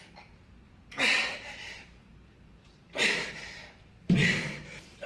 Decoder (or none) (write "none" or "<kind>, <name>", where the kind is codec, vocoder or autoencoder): vocoder, BigVGAN v2